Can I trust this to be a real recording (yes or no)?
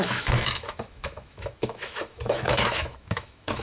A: no